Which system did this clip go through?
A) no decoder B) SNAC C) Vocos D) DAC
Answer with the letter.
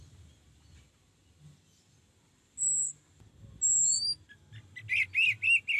A